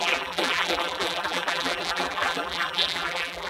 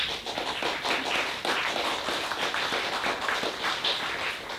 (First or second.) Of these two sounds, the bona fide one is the second